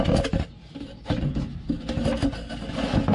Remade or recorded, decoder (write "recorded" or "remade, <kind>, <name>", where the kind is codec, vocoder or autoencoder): recorded